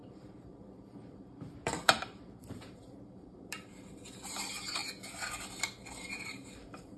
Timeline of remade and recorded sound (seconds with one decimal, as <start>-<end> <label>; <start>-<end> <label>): 0.0-4.8 remade; 4.8-6.0 recorded; 6.0-7.0 remade